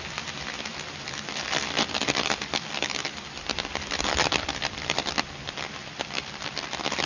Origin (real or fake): fake